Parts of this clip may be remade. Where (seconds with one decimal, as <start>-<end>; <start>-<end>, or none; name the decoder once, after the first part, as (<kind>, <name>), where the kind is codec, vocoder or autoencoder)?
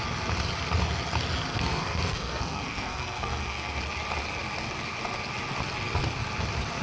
1.5-3.8 (codec, SNAC)